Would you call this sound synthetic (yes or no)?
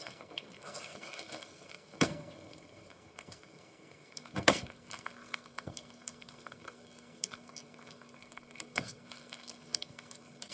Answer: yes